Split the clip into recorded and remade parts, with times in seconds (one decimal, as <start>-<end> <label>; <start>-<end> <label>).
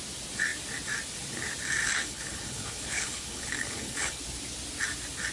0.0-1.8 recorded; 1.8-4.2 remade; 4.2-5.3 recorded